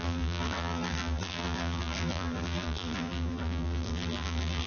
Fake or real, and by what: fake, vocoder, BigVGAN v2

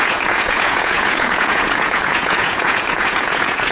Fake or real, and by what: fake, vocoder, Vocos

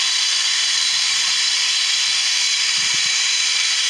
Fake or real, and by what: fake, vocoder, BigVGAN v2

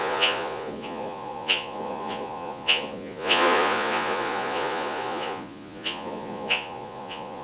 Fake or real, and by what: fake, vocoder, Vocos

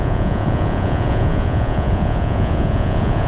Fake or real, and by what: fake, vocoder, Vocos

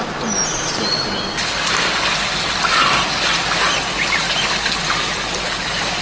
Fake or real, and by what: real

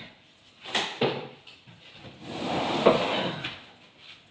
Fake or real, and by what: real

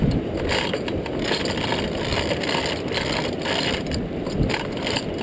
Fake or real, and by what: real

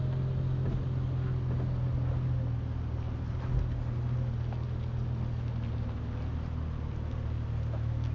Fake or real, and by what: real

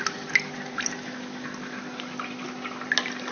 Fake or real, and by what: real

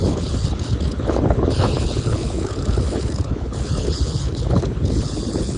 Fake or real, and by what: fake, codec, HILCodec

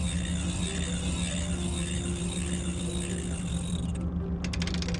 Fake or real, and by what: real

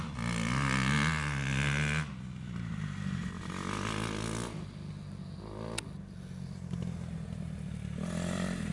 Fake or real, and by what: real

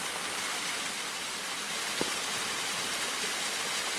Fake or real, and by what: real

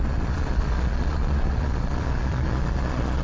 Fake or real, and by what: fake, vocoder, Vocos